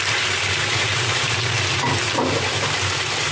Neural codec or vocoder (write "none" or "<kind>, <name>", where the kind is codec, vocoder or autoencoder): vocoder, BigVGAN v2